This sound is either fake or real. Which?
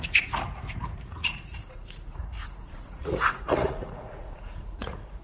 fake